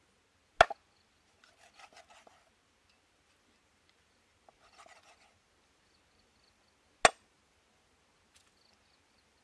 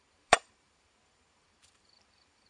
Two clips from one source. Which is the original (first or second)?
first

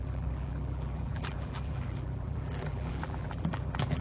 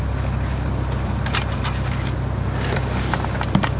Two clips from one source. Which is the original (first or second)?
second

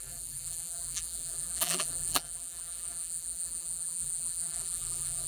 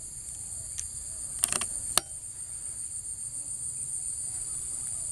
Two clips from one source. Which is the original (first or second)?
second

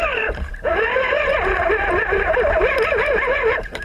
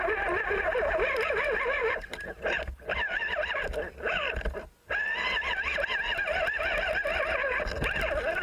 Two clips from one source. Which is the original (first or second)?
second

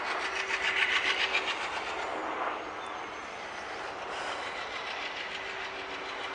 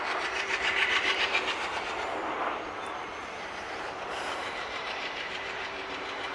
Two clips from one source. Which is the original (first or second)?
first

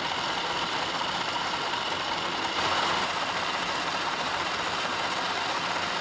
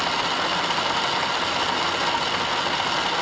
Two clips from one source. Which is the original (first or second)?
second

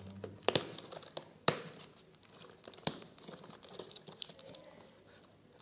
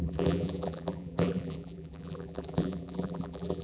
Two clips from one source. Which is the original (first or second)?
first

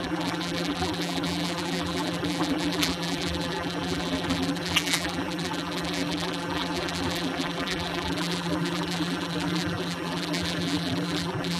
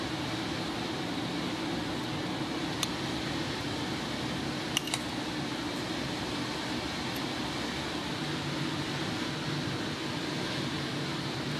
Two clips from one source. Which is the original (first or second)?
second